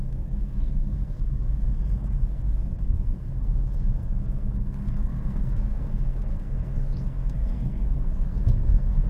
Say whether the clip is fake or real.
fake